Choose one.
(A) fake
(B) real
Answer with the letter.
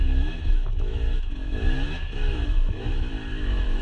A